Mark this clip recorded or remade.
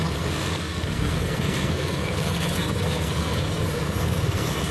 remade